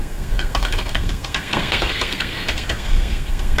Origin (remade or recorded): remade